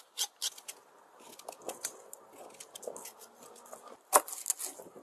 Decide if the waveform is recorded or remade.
recorded